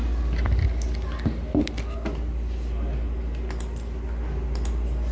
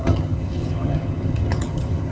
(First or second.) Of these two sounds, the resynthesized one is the second